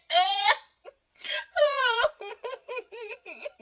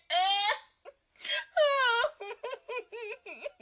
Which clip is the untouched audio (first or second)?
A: second